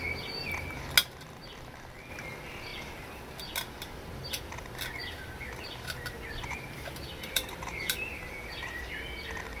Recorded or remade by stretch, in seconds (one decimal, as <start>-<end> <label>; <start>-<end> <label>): 0.0-5.0 recorded; 5.0-8.8 remade; 8.8-9.6 recorded